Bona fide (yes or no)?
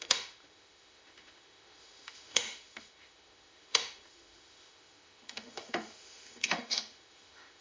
no